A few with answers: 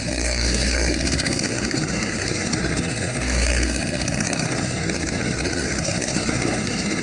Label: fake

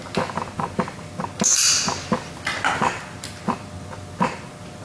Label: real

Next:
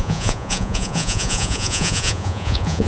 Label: fake